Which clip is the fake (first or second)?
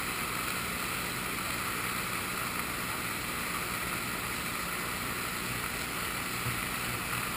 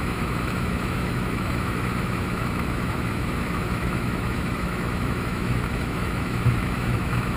second